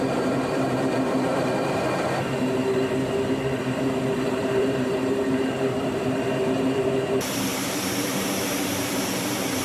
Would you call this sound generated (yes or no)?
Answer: yes